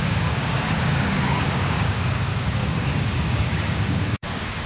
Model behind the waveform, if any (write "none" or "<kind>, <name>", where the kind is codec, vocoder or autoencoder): codec, DAC